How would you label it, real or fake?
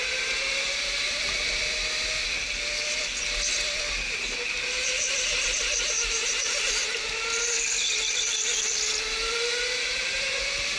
real